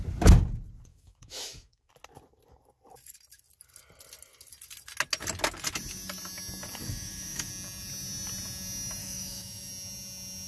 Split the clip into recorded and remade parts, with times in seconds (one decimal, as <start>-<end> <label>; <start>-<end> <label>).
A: 0.0-0.9 recorded; 0.9-1.9 remade; 1.9-6.8 recorded; 6.8-7.5 remade; 7.5-9.0 recorded; 9.0-9.7 remade; 9.7-10.5 recorded